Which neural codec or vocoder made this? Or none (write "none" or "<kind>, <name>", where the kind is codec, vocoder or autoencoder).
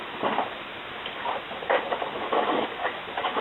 vocoder, BigVGAN v2